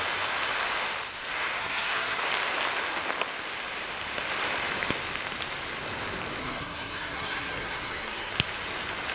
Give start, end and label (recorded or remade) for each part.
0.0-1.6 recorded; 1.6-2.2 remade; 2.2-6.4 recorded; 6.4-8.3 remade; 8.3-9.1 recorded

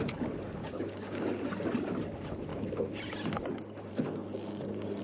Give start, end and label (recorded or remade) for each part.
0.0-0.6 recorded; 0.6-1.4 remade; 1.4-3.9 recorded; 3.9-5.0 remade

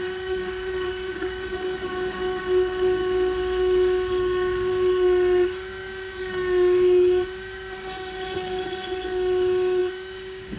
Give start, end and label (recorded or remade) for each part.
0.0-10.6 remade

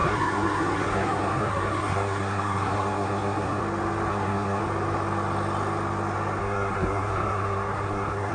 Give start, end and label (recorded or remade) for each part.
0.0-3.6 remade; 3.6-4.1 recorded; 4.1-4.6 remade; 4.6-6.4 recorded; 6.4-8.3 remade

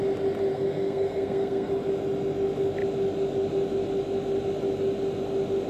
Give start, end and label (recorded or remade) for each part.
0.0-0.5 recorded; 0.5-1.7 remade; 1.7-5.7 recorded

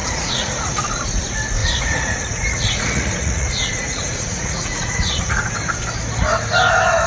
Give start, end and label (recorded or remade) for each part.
0.0-0.7 remade; 0.7-1.6 recorded; 1.6-5.3 remade; 5.3-7.1 recorded